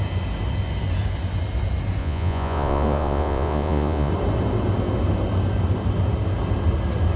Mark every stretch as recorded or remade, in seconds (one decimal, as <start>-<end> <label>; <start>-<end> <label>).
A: 0.0-2.0 recorded; 2.0-4.1 remade; 4.1-7.2 recorded